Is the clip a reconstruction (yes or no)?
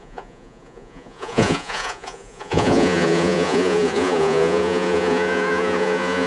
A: yes